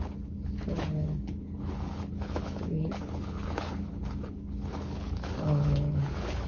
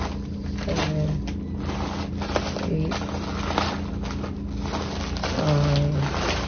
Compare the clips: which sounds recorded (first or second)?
second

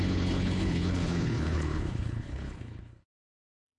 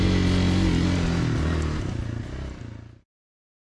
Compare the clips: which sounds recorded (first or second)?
second